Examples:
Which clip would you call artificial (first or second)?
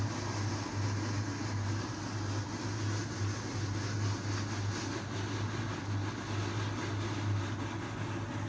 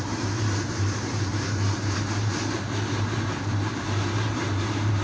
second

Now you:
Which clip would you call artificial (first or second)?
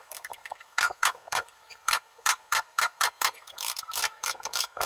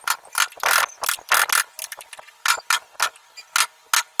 first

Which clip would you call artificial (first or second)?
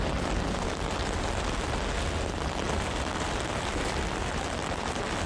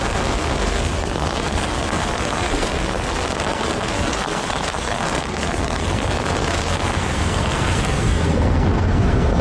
second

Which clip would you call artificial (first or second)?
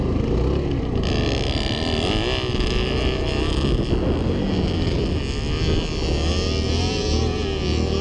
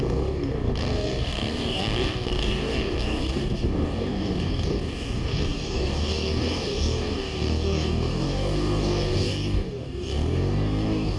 second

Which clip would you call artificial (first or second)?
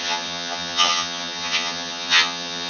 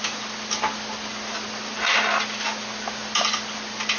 first